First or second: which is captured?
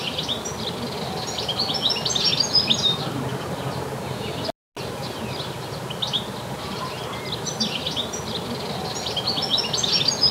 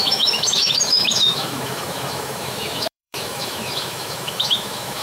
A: first